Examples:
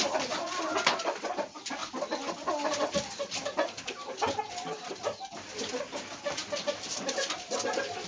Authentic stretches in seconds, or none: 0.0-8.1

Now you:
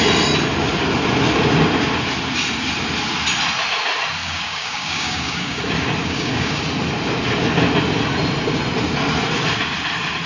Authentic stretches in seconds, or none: 0.0-4.2; 5.6-6.0; 6.6-10.3

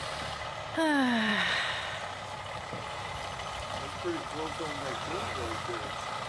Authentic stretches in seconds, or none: 0.0-4.8; 5.7-6.3